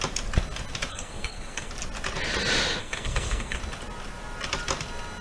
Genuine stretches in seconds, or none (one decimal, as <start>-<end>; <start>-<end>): 0.0-0.9; 1.7-2.8; 3.6-5.2